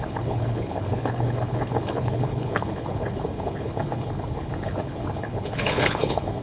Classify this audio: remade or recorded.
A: remade